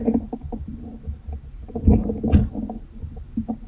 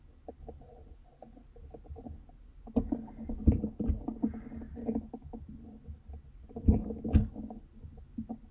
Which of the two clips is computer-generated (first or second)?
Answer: first